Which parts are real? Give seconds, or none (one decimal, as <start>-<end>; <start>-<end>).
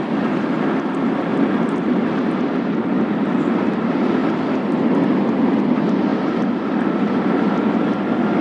0.0-8.4